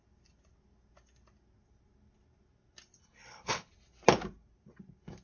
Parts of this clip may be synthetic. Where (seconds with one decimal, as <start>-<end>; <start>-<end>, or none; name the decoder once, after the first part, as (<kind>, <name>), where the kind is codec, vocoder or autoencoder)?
3.0-3.7 (codec, HILCodec)